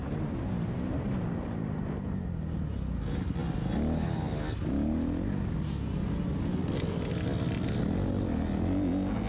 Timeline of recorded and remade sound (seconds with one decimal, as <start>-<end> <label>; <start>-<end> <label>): 0.0-9.3 recorded